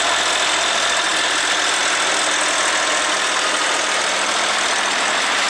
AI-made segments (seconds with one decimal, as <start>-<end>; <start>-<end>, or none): none